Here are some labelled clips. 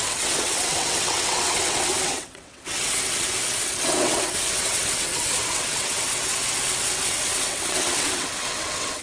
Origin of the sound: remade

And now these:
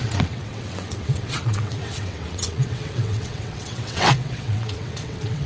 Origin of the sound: remade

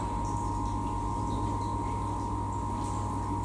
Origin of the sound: recorded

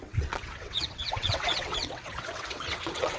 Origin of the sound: remade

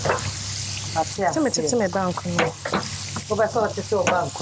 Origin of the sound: recorded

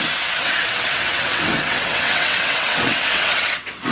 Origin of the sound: remade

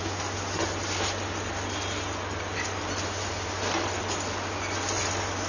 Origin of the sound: recorded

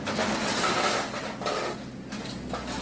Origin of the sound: recorded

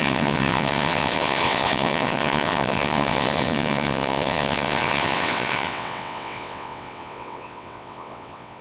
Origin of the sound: remade